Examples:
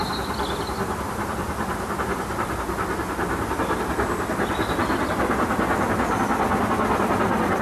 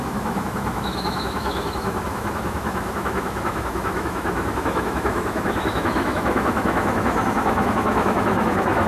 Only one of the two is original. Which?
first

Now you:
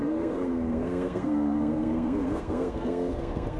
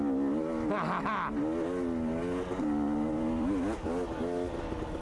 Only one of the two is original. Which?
second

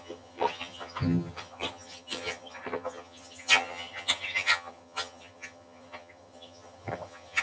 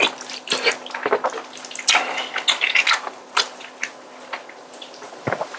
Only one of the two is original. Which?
second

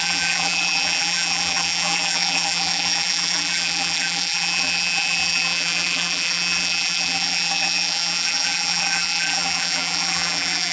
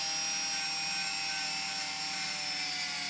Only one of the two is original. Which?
second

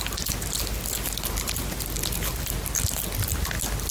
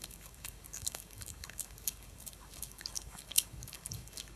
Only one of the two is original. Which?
first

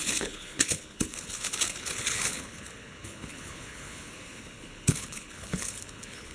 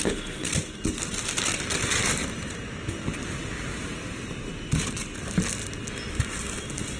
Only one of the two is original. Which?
second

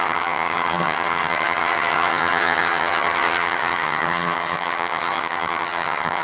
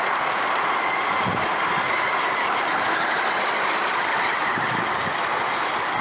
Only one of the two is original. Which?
second